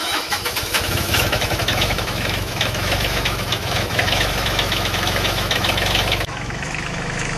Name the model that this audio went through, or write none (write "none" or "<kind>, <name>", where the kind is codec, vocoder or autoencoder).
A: autoencoder, DAC-VAE